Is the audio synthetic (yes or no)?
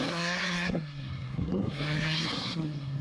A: yes